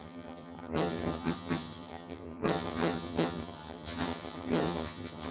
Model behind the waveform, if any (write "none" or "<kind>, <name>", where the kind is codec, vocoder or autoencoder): vocoder, HiFi-GAN